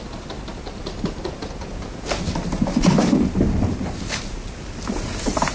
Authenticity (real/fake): real